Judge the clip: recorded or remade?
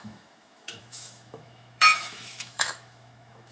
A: remade